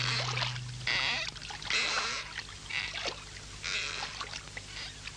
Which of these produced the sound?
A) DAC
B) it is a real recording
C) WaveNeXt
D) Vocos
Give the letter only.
B